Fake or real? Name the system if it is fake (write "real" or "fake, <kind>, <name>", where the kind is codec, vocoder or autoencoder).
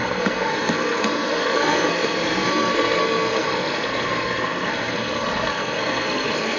fake, codec, SNAC